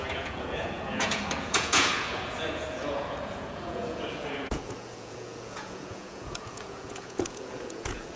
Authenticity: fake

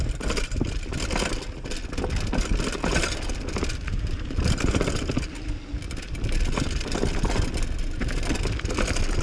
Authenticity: real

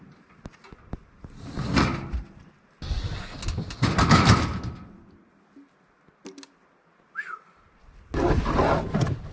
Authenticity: real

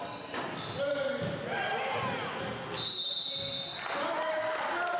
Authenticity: real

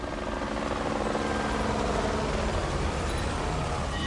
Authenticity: real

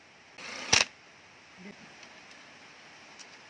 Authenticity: real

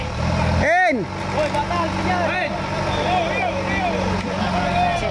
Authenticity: real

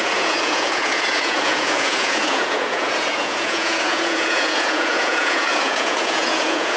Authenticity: fake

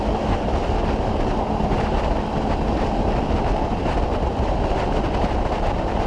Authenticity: real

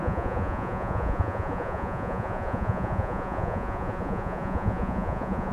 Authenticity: fake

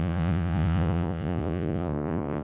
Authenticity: fake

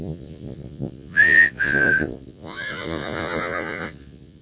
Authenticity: fake